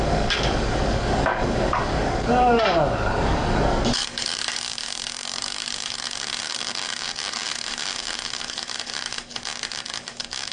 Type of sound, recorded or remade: remade